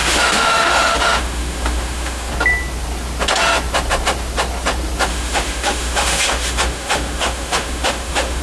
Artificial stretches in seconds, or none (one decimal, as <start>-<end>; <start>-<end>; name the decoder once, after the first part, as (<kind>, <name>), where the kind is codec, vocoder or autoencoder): 0.0-2.3 (autoencoder, DAC-VAE); 5.1-8.4